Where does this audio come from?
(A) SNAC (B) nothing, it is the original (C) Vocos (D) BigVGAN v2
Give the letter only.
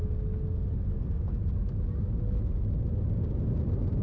B